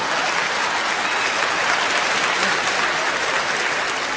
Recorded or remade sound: recorded